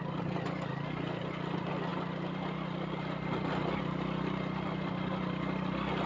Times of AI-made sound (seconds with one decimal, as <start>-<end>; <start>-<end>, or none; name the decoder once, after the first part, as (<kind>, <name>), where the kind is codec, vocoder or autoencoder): none